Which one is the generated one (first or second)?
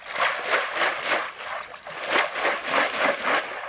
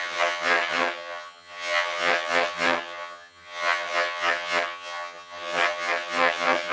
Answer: second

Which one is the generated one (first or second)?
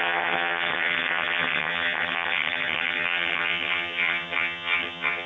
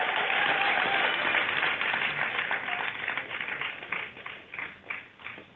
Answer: first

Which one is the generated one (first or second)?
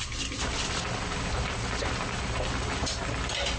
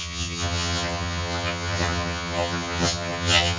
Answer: second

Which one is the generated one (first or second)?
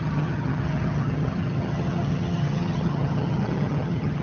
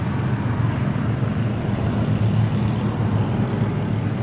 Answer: first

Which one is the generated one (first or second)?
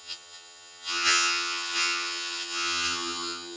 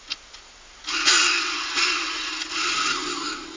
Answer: first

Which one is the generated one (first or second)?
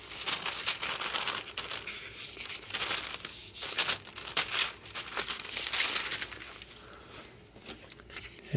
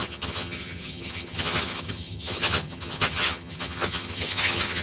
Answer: second